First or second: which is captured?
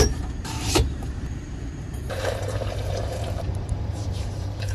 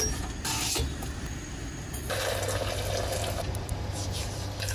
second